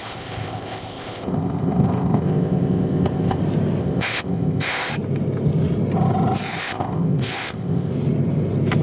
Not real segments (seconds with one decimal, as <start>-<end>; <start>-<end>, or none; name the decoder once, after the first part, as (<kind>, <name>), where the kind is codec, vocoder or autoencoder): 0.0-3.4 (codec, ZipCodec); 3.8-4.9; 6.6-7.9